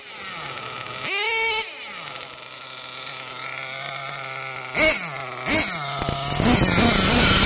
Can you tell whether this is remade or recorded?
recorded